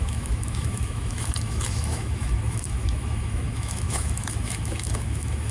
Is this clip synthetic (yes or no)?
yes